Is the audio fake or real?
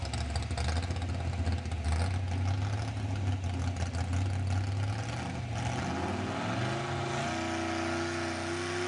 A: real